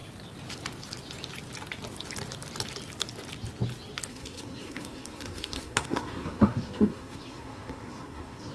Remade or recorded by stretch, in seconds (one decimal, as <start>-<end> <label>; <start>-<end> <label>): 0.0-4.1 recorded; 4.1-8.5 remade